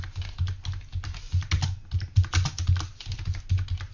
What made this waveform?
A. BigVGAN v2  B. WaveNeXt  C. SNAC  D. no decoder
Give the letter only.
D